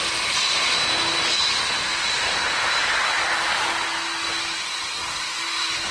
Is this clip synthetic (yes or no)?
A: no